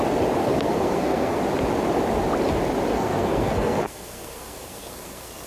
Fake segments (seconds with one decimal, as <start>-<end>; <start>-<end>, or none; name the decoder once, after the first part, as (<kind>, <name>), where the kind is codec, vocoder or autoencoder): 0.4-1.4 (codec, SNAC); 2.9-5.5